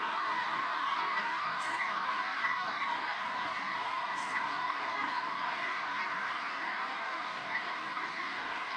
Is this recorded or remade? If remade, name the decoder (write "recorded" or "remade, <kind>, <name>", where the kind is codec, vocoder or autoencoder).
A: remade, codec, DAC